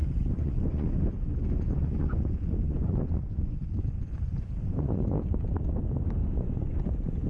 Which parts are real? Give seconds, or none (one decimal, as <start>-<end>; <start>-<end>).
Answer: 4.2-4.7; 5.5-6.2; 6.8-7.3